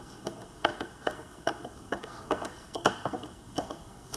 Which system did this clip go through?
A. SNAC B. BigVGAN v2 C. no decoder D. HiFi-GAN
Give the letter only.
A